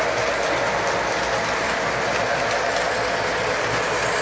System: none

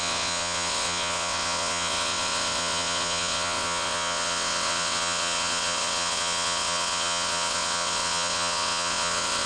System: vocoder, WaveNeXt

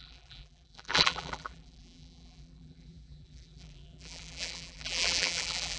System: vocoder, BigVGAN v2